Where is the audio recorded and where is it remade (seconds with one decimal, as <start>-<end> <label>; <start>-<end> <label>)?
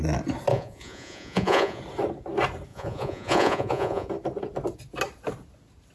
0.0-0.5 recorded; 0.5-1.8 remade; 1.8-2.7 recorded; 2.7-4.1 remade; 4.1-5.9 recorded